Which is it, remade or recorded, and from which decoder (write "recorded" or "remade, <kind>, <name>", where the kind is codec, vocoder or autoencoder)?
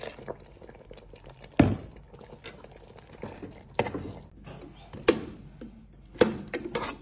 recorded